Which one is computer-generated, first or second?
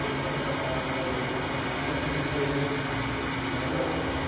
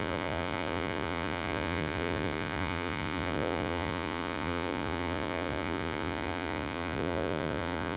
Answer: second